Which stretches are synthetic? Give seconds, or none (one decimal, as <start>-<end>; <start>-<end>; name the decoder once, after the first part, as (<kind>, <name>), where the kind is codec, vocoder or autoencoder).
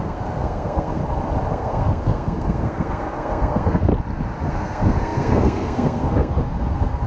0.0-1.0 (codec, SNAC); 1.5-3.9; 4.5-7.1